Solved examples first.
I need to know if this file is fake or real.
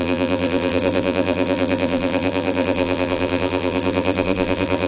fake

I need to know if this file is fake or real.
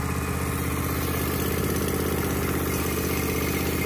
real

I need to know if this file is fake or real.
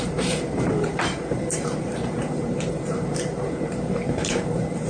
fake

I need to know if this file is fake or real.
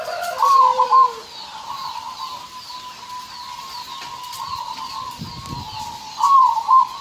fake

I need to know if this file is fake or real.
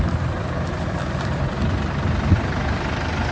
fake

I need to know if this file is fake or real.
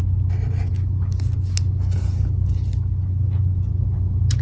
real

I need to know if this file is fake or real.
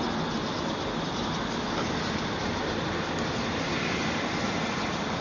real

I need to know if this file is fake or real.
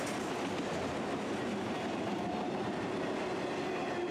real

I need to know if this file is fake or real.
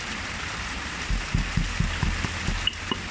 fake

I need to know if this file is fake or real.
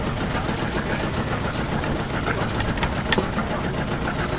real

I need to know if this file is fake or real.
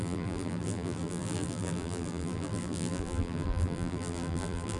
fake